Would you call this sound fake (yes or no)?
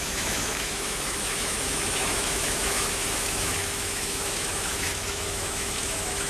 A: yes